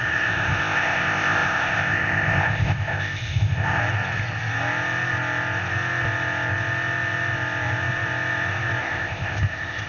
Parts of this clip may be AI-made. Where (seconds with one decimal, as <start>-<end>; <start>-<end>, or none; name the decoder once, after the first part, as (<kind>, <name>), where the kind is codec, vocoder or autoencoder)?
0.0-3.8 (codec, ZipCodec); 8.8-9.9